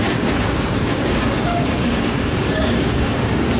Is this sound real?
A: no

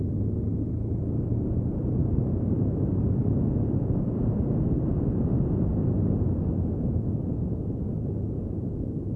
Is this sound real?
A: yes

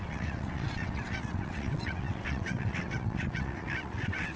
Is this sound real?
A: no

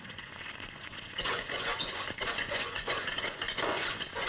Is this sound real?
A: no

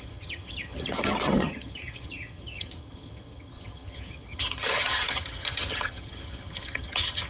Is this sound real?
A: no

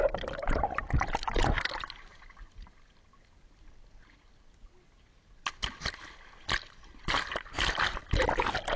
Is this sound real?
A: yes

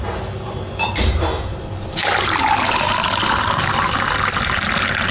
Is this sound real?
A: yes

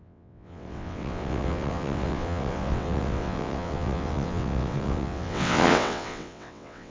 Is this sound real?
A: no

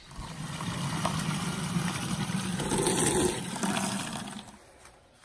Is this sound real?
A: yes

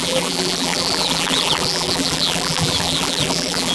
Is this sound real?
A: no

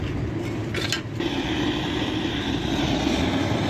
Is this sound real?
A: yes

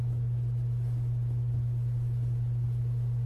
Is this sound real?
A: yes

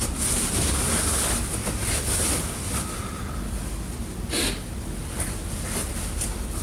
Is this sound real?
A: yes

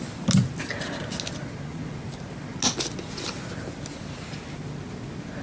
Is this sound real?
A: yes